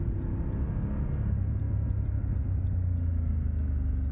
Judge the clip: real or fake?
real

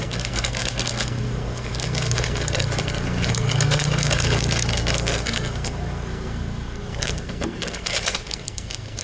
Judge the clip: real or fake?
fake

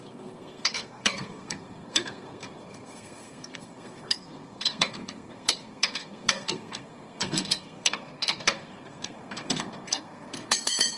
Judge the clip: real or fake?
fake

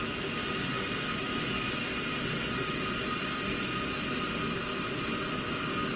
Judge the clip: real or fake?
real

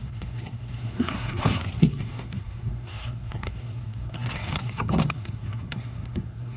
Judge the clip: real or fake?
fake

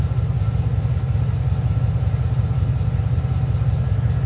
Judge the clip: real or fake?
real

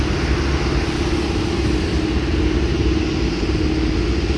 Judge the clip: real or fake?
real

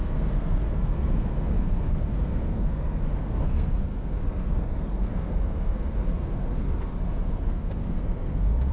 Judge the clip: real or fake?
fake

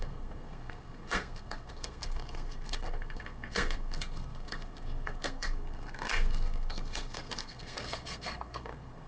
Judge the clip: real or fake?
fake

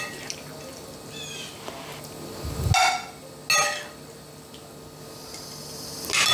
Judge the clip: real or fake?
real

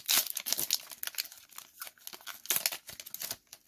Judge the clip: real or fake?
real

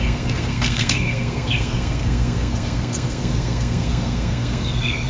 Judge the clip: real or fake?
fake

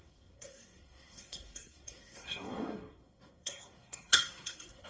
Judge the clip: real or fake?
fake